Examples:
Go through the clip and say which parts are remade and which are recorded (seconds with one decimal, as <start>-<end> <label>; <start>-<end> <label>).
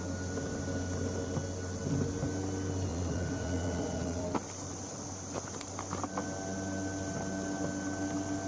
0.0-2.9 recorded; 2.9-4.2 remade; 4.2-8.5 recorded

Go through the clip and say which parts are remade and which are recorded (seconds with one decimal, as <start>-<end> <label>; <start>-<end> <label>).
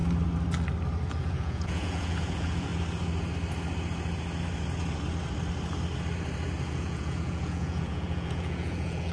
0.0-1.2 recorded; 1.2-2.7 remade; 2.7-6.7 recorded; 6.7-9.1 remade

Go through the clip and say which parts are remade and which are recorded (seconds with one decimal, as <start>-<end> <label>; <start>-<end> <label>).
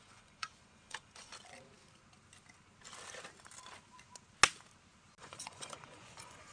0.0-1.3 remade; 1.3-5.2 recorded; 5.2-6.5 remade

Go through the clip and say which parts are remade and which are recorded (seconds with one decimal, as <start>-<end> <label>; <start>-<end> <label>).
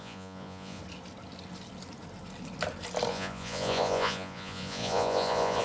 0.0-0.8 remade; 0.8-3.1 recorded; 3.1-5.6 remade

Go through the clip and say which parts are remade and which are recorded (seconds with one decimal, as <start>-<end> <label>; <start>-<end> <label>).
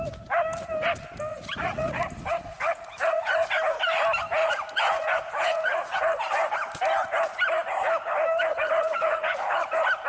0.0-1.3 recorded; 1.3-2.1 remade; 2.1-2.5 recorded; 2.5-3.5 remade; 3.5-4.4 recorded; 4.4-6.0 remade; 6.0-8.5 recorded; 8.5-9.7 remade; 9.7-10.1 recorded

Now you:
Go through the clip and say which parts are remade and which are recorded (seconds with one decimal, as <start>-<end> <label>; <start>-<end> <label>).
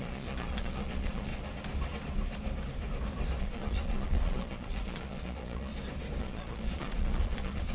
0.0-1.3 remade; 1.3-3.4 recorded; 3.4-5.7 remade; 5.7-6.2 recorded; 6.2-7.7 remade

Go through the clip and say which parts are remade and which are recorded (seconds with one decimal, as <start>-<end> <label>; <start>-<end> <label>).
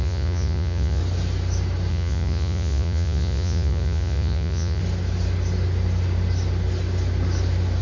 0.0-1.0 remade; 1.0-1.9 recorded; 1.9-4.8 remade; 4.8-7.8 recorded